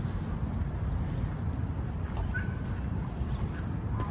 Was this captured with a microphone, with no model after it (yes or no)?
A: yes